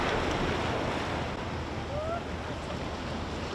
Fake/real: real